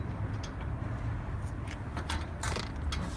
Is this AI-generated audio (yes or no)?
no